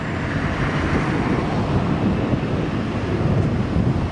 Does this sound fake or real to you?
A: real